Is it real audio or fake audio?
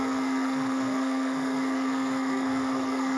fake